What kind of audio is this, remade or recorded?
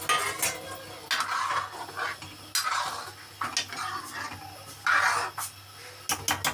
recorded